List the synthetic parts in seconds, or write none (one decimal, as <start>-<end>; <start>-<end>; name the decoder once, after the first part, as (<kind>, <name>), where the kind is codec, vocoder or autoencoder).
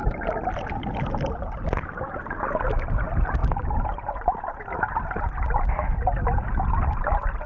none